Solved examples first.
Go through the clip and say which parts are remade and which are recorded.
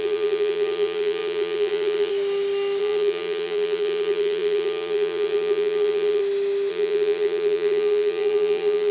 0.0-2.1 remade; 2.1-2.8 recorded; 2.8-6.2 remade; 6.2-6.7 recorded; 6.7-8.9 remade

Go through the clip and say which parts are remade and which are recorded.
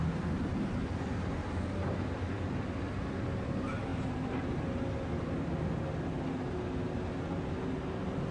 0.0-8.3 recorded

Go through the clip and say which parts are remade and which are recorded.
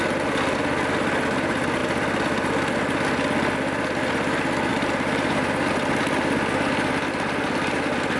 0.0-4.7 recorded; 4.7-5.7 remade; 5.7-8.2 recorded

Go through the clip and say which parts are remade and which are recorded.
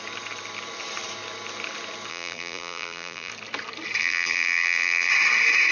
0.0-2.1 recorded; 2.1-3.3 remade; 3.3-4.0 recorded; 4.0-5.1 remade; 5.1-5.7 recorded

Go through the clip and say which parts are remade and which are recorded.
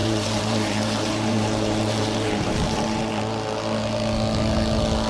0.0-3.1 remade; 3.1-5.1 recorded